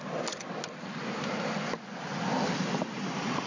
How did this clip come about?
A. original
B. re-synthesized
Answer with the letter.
A